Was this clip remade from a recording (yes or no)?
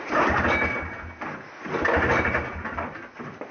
no